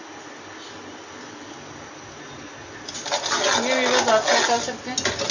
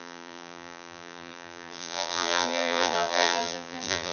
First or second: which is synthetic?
second